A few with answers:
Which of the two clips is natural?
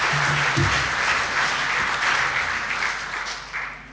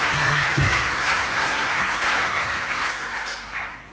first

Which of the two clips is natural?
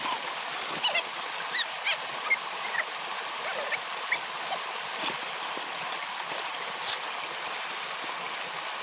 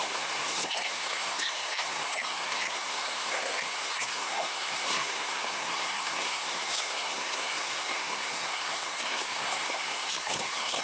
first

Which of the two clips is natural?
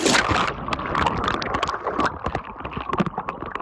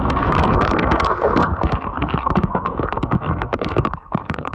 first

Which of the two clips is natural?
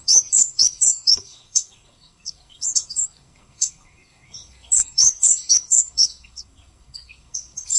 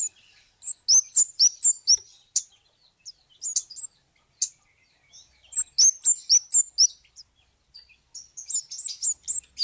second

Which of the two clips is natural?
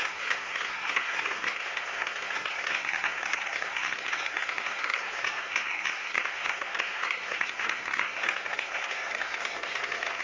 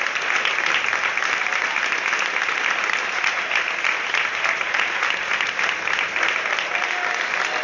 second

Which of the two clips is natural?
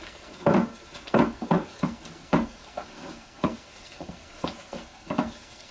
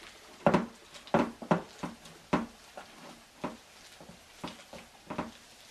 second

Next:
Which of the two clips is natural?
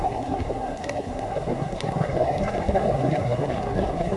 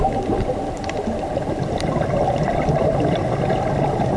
second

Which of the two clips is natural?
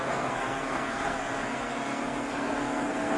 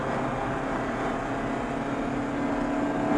second